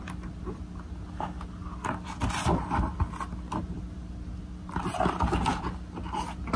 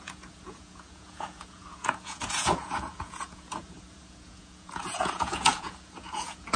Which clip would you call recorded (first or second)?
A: first